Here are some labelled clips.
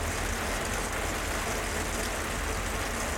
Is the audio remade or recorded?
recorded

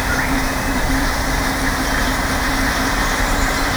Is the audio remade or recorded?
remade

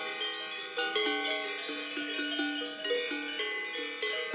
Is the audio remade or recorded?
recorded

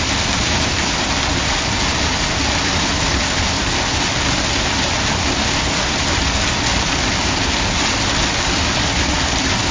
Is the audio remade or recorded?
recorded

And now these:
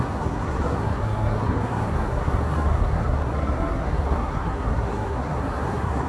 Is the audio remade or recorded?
remade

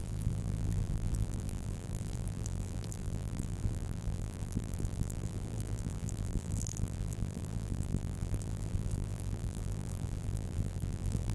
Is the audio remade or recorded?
remade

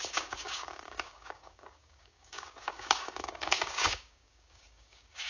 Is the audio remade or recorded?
remade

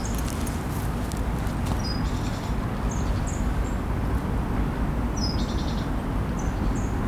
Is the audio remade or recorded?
recorded